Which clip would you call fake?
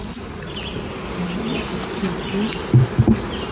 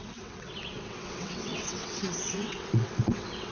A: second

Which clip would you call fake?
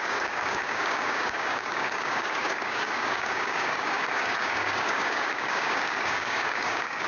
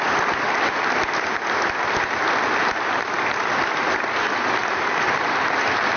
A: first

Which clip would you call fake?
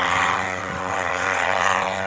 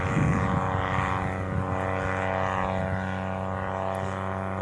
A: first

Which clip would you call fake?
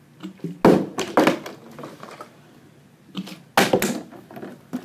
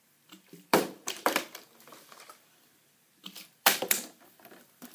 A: second